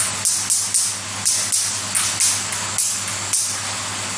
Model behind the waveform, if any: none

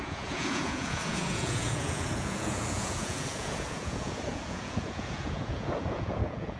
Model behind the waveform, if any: vocoder, Vocos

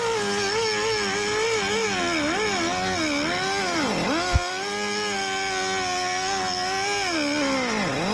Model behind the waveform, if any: none